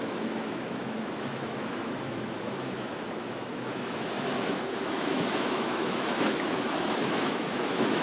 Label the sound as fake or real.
fake